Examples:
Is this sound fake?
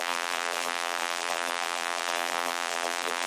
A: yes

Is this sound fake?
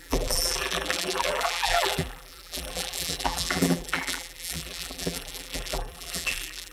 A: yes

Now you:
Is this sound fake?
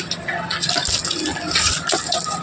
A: no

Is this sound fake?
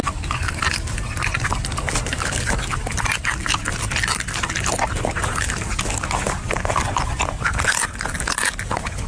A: no